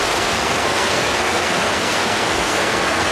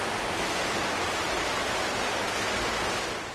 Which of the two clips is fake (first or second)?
first